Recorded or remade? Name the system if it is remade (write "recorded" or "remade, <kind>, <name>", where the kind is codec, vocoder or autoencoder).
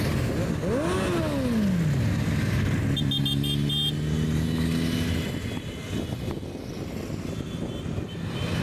recorded